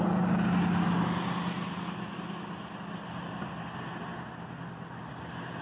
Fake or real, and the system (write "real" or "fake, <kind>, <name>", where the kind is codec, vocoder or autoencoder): real